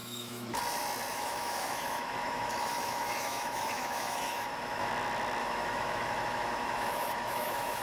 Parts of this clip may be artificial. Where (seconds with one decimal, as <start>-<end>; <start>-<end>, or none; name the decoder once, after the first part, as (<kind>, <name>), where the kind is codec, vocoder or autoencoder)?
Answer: 0.0-0.6 (autoencoder, DAC-VAE); 1.1-4.9; 5.4-7.8